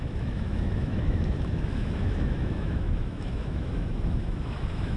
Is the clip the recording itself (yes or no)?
no